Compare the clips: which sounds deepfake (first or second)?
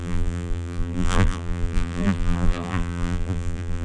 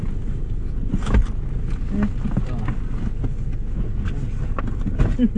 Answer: first